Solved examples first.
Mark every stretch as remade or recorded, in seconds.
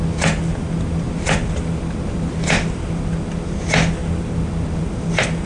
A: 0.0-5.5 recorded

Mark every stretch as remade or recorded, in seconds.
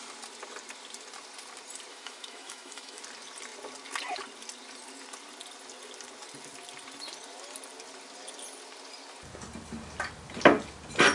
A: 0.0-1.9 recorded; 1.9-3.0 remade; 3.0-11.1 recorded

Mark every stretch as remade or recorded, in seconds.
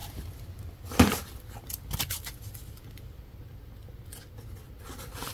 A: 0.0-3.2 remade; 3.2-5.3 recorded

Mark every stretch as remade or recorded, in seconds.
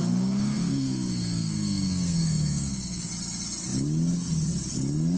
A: 0.0-3.1 remade; 3.1-5.2 recorded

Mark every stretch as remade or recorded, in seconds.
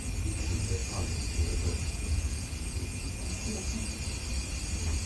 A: 0.0-0.8 recorded; 0.8-3.9 remade; 3.9-5.1 recorded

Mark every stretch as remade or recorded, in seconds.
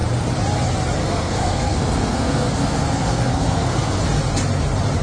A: 0.0-1.0 recorded; 1.0-4.0 remade; 4.0-5.0 recorded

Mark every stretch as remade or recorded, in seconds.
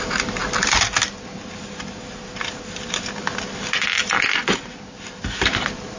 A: 0.0-6.0 recorded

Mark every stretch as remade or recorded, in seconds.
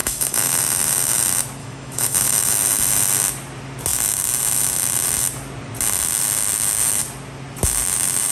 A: 0.0-0.6 remade; 0.6-1.6 recorded; 1.6-2.5 remade; 2.5-8.3 recorded